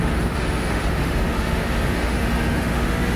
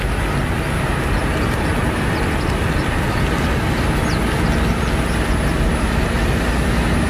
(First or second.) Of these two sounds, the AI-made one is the first